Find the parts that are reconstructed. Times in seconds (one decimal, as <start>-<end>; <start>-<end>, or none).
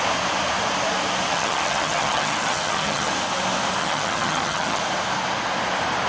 1.3-3.1; 3.8-4.8